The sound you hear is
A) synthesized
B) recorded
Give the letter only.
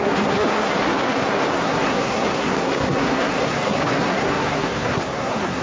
A